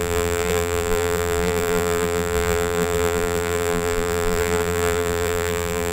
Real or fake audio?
fake